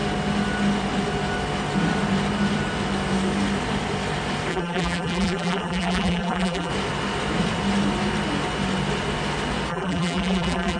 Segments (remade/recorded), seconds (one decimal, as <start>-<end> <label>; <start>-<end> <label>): 0.0-4.5 recorded; 4.5-6.7 remade; 6.7-9.7 recorded; 9.7-10.8 remade